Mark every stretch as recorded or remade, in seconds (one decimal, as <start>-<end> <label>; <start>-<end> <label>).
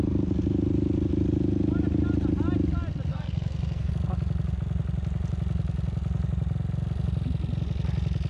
0.0-3.1 recorded; 3.1-3.9 remade; 3.9-8.3 recorded